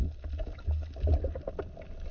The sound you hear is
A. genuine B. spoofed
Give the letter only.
A